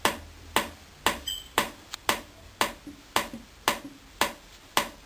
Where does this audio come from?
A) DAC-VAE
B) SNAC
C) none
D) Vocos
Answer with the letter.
C